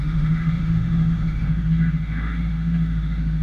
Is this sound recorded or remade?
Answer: remade